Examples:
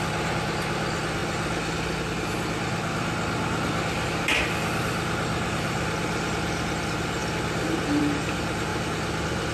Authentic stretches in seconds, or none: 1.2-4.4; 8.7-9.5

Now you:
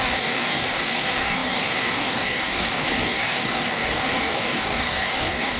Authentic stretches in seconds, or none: none

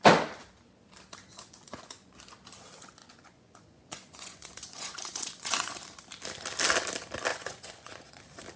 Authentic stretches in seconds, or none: 0.0-1.3; 2.2-3.0; 5.8-7.3; 8.2-8.6

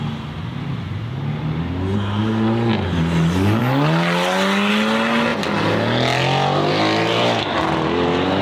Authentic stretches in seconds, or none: 0.0-8.4

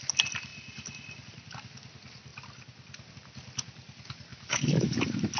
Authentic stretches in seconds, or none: 0.0-4.3; 5.0-5.4